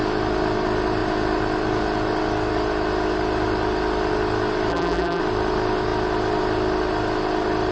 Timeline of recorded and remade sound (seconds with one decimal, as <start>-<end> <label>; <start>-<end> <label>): 0.0-4.7 recorded; 4.7-5.2 remade; 5.2-7.7 recorded